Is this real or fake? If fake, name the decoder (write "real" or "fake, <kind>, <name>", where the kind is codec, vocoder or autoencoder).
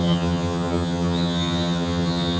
fake, vocoder, HiFi-GAN